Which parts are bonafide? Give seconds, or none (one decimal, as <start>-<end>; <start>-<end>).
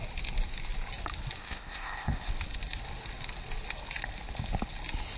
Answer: 0.0-1.4; 2.3-5.2